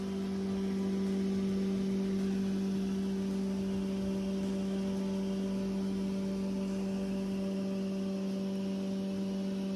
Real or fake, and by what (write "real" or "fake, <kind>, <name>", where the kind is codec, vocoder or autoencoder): real